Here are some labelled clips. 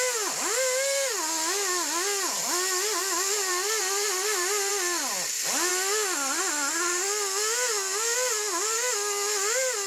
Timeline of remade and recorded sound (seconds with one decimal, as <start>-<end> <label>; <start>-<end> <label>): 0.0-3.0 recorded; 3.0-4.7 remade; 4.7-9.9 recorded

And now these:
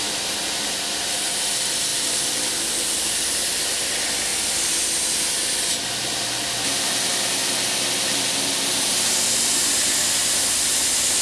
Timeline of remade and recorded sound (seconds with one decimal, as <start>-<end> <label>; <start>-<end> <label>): 0.0-1.9 recorded; 1.9-3.0 remade; 3.0-11.2 recorded

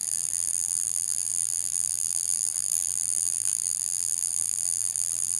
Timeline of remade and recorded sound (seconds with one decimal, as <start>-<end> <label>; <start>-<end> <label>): 0.0-5.4 remade

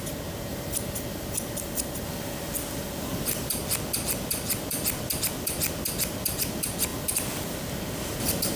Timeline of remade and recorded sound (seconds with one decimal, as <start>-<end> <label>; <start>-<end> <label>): 0.0-0.5 recorded; 0.5-3.5 remade; 3.5-6.9 recorded; 6.9-7.4 remade; 7.4-8.6 recorded